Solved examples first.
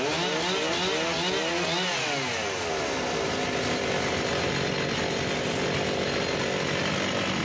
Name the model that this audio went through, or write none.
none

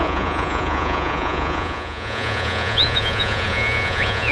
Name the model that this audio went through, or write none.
vocoder, Vocos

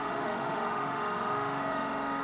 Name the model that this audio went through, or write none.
autoencoder, DAC-VAE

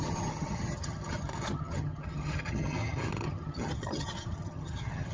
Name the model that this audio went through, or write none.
vocoder, HiFi-GAN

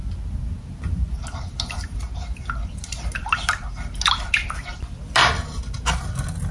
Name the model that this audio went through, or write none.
none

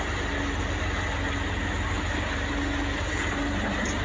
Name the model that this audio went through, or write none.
none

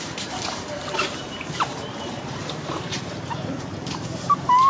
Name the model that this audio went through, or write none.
vocoder, BigVGAN v2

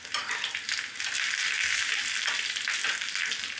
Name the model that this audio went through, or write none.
none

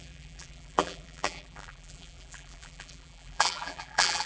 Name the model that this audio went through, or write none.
vocoder, BigVGAN v2